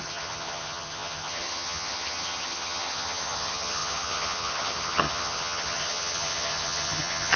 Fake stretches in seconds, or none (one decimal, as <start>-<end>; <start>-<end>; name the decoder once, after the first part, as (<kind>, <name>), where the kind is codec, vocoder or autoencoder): 0.0-7.4 (vocoder, HiFi-GAN)